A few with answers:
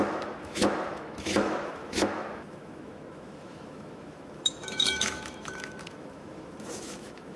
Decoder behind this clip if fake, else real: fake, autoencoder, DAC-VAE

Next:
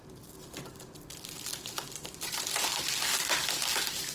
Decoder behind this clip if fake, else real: real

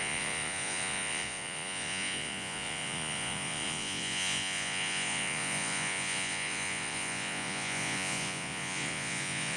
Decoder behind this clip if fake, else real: fake, vocoder, Vocos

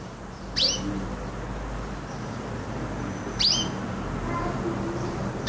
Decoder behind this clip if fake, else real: real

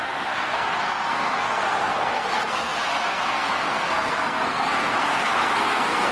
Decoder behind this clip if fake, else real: fake, codec, SNAC